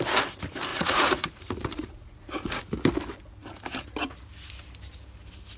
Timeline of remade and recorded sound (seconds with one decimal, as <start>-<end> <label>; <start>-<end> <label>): 0.0-0.7 recorded; 0.7-2.6 remade; 2.6-5.6 recorded